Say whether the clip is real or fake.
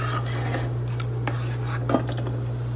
real